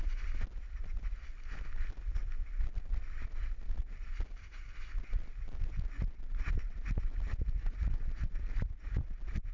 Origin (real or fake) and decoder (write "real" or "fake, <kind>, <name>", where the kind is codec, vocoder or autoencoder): real